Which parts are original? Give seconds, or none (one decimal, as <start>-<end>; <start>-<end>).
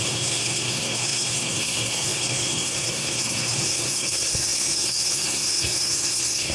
none